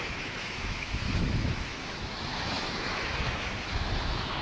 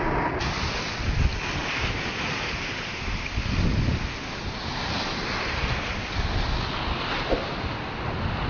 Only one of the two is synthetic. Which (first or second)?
first